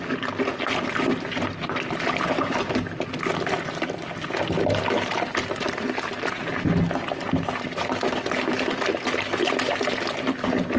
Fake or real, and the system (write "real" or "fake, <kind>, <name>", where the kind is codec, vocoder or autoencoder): real